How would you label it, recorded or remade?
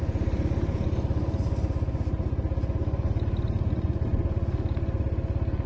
recorded